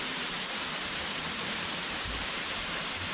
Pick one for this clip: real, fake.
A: fake